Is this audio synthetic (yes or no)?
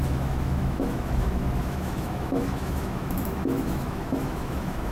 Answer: yes